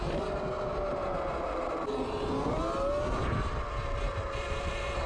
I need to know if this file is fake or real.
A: real